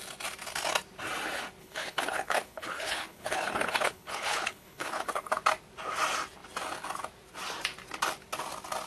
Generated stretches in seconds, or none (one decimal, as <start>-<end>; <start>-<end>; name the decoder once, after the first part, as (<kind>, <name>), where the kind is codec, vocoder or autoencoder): 1.6-5.3 (codec, HILCodec)